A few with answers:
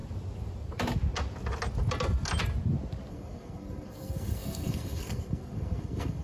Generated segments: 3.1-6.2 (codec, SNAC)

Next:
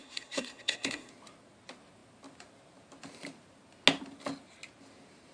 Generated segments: 0.0-1.1 (codec, SNAC)